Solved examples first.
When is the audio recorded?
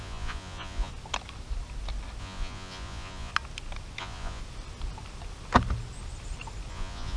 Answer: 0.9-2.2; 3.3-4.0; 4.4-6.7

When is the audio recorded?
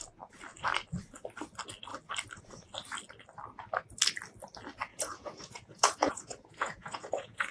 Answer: 0.0-4.9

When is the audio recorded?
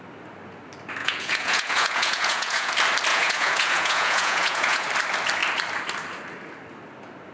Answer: 0.0-1.0; 2.7-3.1; 4.9-7.3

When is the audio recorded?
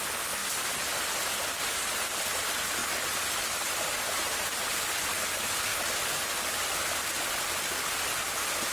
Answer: 0.0-5.7; 6.9-8.7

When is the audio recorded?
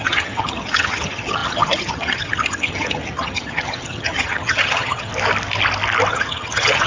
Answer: 5.1-6.1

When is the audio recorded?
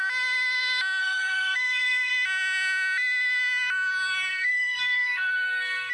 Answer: 0.0-1.0; 2.1-4.3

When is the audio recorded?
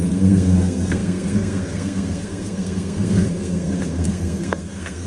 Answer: none